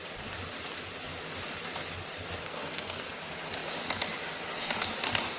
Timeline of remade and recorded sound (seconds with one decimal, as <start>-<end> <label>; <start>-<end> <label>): 0.0-2.4 recorded; 2.4-3.1 remade; 3.1-5.4 recorded